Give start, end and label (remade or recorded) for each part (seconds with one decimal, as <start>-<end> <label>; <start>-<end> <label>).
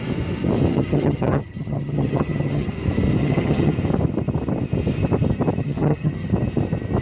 0.0-0.7 recorded; 0.7-2.7 remade; 2.7-3.2 recorded; 3.2-3.7 remade; 3.7-5.6 recorded; 5.6-6.3 remade; 6.3-7.0 recorded